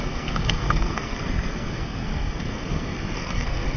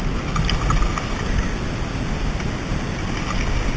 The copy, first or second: first